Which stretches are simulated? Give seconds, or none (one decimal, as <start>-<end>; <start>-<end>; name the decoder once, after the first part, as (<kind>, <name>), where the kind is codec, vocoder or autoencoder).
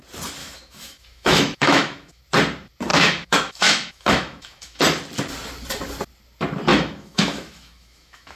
0.4-2.2 (autoencoder, DAC-VAE); 2.9-4.8; 6.7-8.4